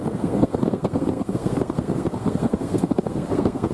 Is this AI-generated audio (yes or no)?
yes